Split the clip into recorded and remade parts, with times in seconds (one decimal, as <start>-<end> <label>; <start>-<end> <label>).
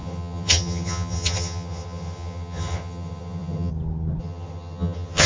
0.0-3.7 remade; 3.7-4.2 recorded; 4.2-5.3 remade